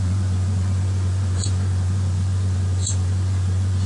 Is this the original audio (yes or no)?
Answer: no